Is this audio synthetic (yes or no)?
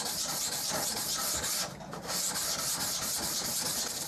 no